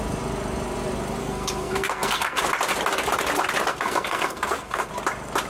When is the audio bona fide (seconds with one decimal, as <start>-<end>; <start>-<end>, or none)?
0.0-1.2; 2.4-3.7; 4.9-5.5